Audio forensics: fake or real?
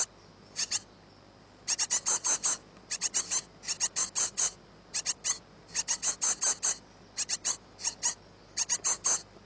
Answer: real